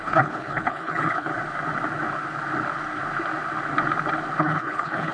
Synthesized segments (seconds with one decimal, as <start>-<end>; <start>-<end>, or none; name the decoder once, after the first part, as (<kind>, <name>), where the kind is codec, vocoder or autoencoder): 0.0-1.3 (codec, HILCodec); 4.4-5.1